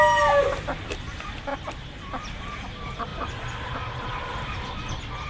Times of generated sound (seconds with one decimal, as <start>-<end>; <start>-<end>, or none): 3.1-4.4